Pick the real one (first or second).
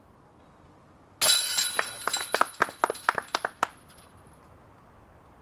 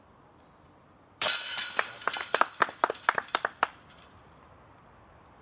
first